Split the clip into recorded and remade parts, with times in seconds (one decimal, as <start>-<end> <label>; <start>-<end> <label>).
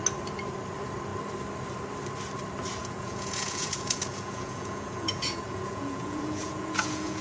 0.0-2.8 recorded; 2.8-7.2 remade